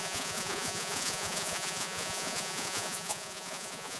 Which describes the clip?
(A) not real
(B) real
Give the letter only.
A